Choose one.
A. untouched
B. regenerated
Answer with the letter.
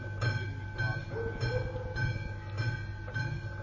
A